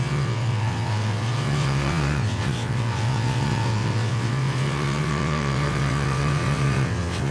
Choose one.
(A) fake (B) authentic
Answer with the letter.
A